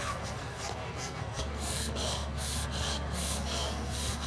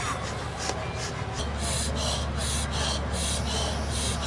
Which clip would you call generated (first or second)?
first